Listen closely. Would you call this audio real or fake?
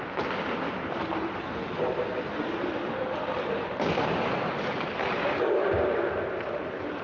real